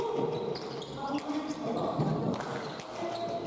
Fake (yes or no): no